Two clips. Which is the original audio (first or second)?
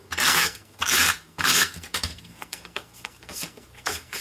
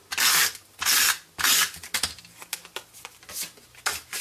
second